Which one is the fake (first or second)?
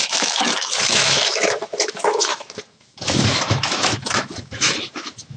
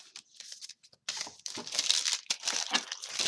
first